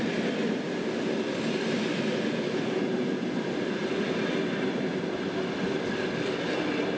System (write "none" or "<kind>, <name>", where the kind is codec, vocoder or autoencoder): none